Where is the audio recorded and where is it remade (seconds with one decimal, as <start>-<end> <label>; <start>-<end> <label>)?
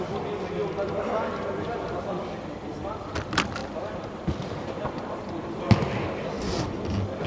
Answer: 0.0-7.3 recorded